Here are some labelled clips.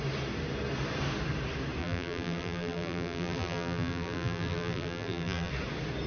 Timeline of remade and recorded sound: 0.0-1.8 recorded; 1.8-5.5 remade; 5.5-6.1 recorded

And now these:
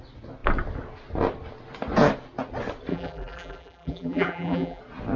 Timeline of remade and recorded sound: 0.0-2.9 recorded; 2.9-4.8 remade; 4.8-5.2 recorded

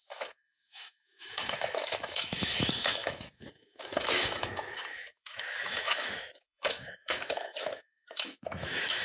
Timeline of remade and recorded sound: 0.0-9.0 remade

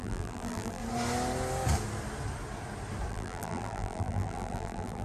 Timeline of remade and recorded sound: 0.0-0.8 remade; 0.8-3.1 recorded; 3.1-5.0 remade

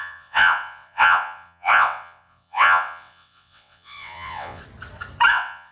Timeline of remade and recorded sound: 0.0-4.6 remade; 4.6-5.3 recorded; 5.3-5.7 remade

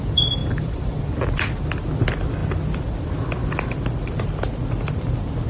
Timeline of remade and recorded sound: 0.0-0.4 recorded; 0.4-1.0 remade; 1.0-5.5 recorded

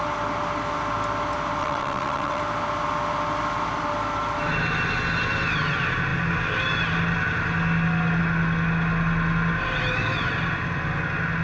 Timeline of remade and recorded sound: 0.0-1.6 recorded; 1.6-2.4 remade; 2.4-11.4 recorded